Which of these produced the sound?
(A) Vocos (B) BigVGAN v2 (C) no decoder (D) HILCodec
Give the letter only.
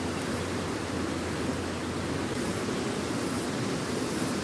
C